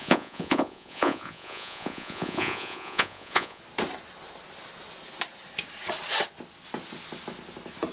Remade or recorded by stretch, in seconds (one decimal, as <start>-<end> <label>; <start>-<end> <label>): 0.0-3.6 remade; 3.6-7.9 recorded